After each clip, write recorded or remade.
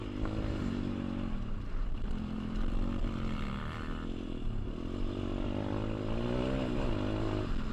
recorded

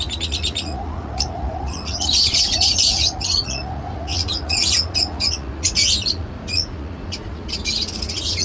remade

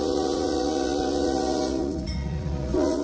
remade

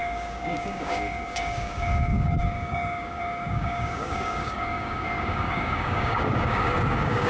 remade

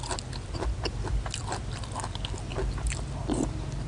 recorded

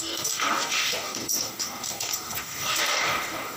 remade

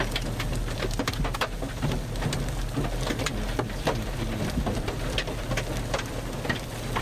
recorded